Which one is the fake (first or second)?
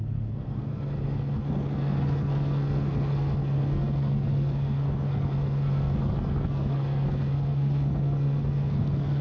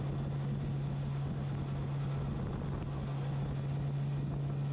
first